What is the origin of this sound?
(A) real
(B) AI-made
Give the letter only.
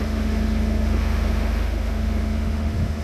B